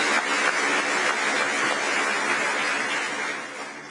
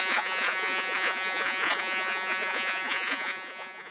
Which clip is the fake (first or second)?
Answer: second